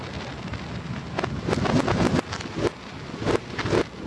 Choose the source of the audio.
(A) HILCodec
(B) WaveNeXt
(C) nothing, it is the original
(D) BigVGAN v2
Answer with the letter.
C